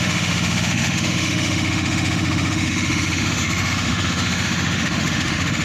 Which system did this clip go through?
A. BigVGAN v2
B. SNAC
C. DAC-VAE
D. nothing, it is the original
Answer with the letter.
C